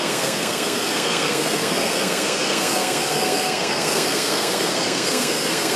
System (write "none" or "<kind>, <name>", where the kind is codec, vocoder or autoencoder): codec, SNAC